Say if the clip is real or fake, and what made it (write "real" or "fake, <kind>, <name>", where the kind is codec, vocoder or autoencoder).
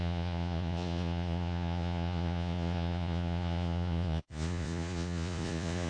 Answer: fake, vocoder, Vocos